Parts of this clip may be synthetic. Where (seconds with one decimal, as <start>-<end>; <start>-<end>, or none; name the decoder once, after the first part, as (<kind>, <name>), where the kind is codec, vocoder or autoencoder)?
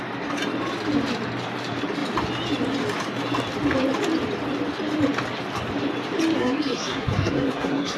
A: 6.4-8.0 (codec, SNAC)